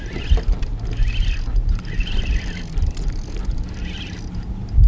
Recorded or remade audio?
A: recorded